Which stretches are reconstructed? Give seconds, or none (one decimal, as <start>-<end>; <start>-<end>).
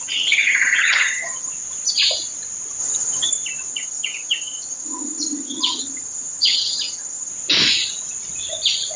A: 0.0-1.5; 2.8-3.3; 3.7-7.3